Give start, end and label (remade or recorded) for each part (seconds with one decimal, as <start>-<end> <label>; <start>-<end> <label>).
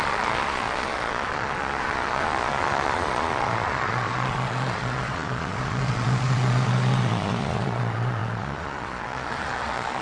0.0-10.0 remade